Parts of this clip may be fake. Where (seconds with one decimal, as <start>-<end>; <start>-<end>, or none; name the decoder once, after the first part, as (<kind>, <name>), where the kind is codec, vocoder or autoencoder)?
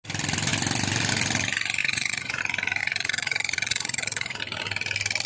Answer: 1.8-2.4 (vocoder, Vocos); 2.8-4.4